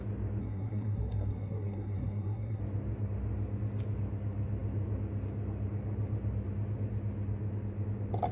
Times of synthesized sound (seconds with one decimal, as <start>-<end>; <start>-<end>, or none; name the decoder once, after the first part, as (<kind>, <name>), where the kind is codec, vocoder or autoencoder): 0.4-2.6 (codec, SNAC)